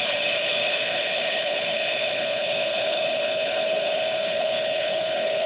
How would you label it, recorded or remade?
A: remade